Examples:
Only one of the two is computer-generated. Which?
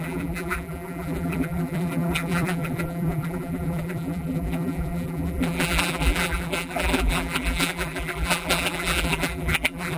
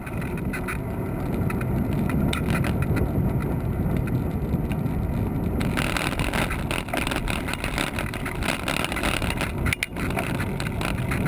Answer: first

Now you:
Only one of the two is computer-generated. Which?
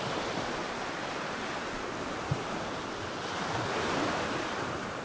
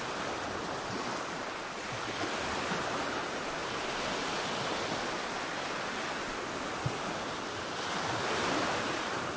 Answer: first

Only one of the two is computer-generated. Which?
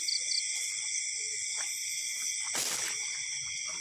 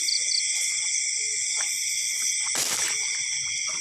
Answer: second